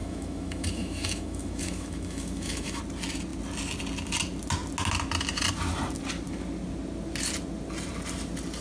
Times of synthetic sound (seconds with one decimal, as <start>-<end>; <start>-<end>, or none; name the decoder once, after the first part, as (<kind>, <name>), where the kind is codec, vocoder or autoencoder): 0.0-2.8 (autoencoder, DAC-VAE)